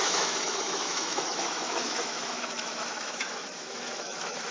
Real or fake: fake